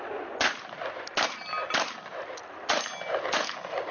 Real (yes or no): yes